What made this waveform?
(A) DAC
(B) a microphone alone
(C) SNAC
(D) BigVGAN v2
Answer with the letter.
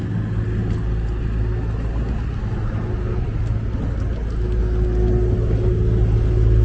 B